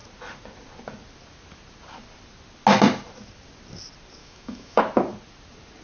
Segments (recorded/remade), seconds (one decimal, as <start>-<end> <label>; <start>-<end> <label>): 0.0-4.2 recorded; 4.2-4.8 remade; 4.8-5.8 recorded